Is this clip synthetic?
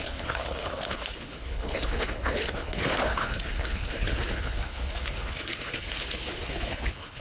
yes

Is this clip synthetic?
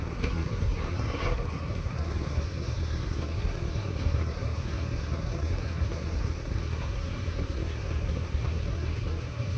yes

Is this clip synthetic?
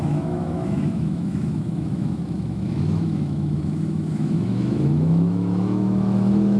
yes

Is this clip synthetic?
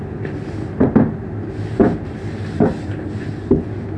no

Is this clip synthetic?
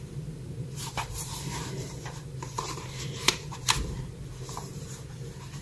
yes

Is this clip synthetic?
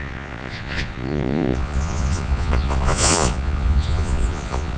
yes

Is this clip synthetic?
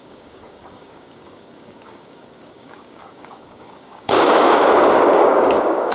yes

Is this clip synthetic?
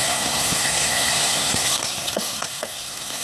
yes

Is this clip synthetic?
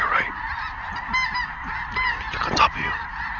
no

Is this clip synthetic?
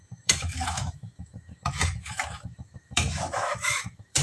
yes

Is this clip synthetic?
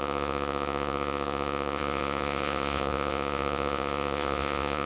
yes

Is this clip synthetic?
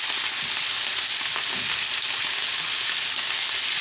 no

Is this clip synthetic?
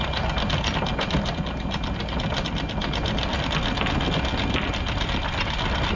no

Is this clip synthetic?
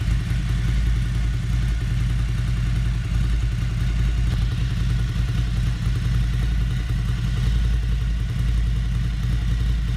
no